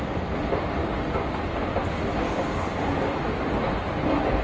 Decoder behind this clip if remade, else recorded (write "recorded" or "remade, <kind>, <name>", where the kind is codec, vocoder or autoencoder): recorded